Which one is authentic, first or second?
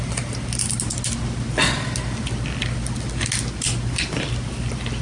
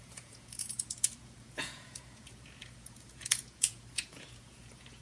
first